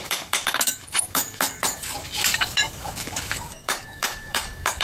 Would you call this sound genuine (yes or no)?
no